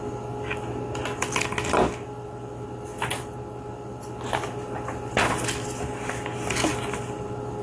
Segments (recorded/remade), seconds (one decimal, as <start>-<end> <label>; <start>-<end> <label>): 0.0-7.6 recorded